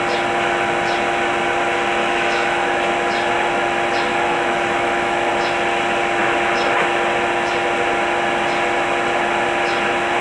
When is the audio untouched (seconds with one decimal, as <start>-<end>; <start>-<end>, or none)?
0.0-2.0; 2.9-4.1; 5.3-10.2